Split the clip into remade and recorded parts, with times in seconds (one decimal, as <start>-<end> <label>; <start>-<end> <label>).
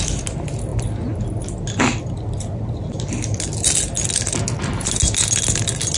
0.0-6.0 recorded